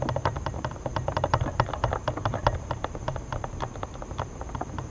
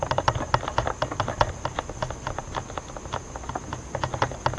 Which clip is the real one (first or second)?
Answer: second